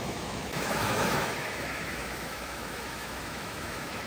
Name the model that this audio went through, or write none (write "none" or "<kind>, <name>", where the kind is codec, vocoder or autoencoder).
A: autoencoder, DAC-VAE